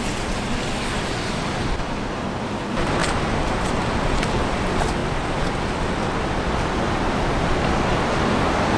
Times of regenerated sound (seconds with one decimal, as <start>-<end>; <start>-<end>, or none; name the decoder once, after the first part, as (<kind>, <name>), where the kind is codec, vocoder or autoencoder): 3.0-3.7 (vocoder, BigVGAN v2)